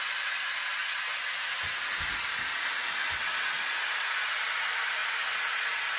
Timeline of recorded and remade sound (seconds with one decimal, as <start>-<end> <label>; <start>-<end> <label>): 0.0-6.0 recorded